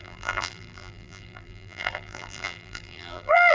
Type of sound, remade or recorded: remade